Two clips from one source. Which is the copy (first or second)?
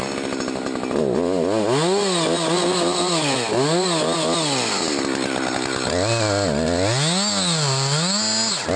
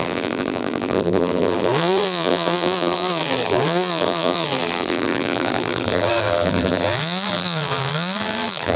second